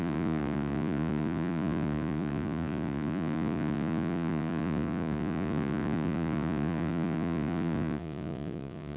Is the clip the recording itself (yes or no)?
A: no